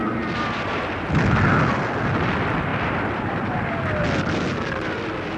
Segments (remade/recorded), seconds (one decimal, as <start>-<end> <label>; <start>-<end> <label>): 0.0-1.0 remade; 1.0-2.7 recorded; 2.7-3.6 remade; 3.6-5.4 recorded